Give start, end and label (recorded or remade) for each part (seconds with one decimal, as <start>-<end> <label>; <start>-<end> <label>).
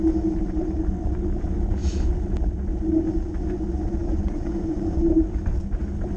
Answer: 0.0-4.0 recorded; 4.0-5.2 remade; 5.2-6.2 recorded